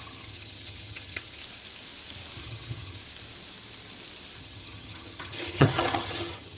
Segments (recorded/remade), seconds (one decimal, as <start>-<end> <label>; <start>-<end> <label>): 0.0-1.4 remade; 1.4-2.4 recorded; 2.4-3.0 remade; 3.0-4.4 recorded; 4.4-6.6 remade